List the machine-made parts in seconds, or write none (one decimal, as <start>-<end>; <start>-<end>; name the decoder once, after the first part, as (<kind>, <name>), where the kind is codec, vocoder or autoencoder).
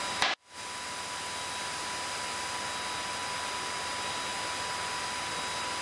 none